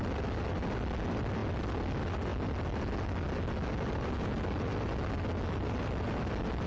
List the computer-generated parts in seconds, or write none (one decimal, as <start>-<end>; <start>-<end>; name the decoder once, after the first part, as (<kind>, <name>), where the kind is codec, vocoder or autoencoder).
none